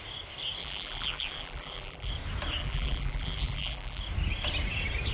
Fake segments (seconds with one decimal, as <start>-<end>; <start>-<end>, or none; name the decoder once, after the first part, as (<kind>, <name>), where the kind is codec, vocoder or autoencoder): 0.6-2.1 (vocoder, BigVGAN v2); 2.6-4.0